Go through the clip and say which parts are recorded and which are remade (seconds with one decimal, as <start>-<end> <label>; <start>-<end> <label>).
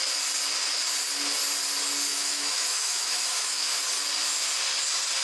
0.0-2.1 recorded; 2.1-3.8 remade; 3.8-5.2 recorded